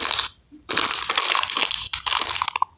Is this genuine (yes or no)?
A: yes